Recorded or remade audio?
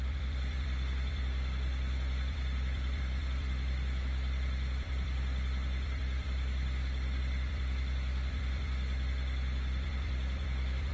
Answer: remade